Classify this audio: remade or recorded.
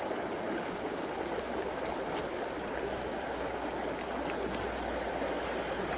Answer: recorded